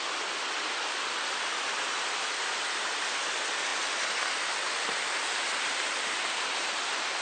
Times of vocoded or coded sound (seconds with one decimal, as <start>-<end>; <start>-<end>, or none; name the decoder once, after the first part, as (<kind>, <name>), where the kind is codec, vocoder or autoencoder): none